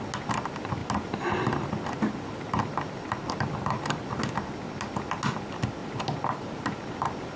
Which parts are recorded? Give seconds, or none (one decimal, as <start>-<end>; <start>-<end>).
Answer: 0.0-7.4